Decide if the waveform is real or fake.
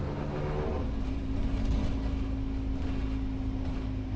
real